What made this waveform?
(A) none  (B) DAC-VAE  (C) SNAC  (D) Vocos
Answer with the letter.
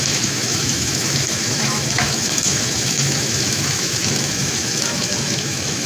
B